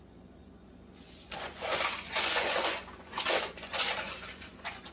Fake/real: fake